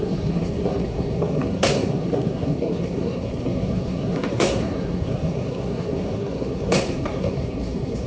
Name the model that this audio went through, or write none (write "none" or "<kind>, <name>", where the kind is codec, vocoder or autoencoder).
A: codec, SNAC